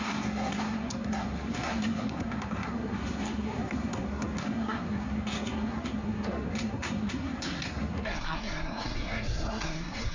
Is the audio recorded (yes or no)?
no